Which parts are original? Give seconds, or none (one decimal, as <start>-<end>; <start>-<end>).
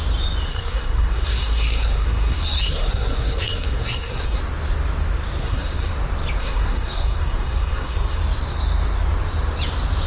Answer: 0.0-0.5; 4.4-5.4; 5.9-6.4; 8.2-10.1